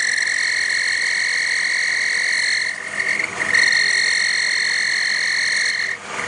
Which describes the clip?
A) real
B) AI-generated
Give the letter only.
A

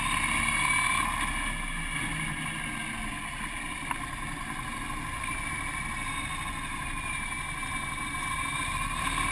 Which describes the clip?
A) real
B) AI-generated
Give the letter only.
A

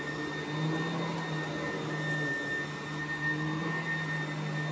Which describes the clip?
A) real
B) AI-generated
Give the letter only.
A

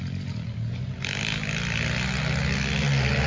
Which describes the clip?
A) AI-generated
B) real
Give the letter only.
B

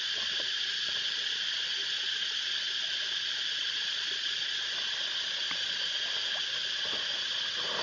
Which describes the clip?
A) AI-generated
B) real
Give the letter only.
B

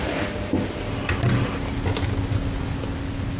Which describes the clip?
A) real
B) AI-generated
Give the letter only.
A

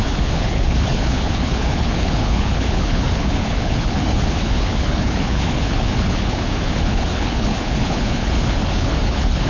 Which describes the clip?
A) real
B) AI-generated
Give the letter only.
B